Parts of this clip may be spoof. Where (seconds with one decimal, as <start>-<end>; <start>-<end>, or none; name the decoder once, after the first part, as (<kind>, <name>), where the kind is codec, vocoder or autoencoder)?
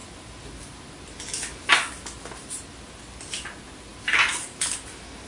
none